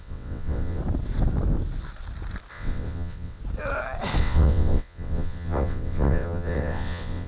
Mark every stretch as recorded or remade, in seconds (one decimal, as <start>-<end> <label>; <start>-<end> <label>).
0.0-0.8 remade; 0.8-2.5 recorded; 2.5-3.4 remade; 3.4-4.2 recorded; 4.2-7.3 remade